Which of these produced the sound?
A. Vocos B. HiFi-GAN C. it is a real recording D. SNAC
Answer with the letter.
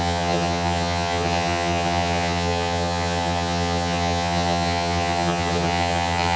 B